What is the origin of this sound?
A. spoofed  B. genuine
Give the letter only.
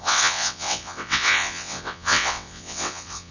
A